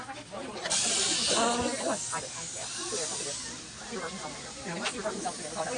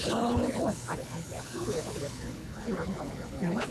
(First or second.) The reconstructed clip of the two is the second